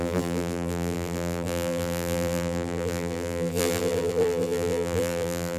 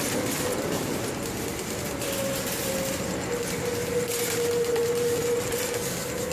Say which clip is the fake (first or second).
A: first